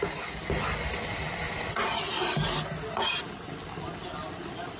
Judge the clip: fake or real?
real